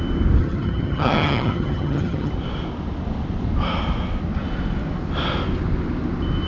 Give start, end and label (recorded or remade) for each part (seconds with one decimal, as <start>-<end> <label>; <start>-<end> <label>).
0.0-0.4 recorded; 0.4-2.3 remade; 2.3-6.5 recorded